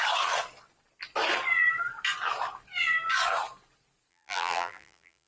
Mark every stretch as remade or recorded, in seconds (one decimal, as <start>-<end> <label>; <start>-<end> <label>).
0.0-4.1 recorded; 4.1-5.3 remade